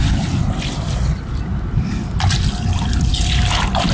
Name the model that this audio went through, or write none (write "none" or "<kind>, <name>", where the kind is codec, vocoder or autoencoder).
none